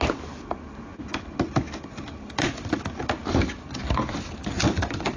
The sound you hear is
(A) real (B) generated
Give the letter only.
A